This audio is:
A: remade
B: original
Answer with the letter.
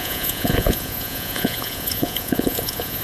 A